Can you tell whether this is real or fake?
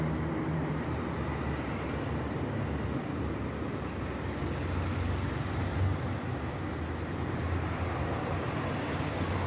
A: real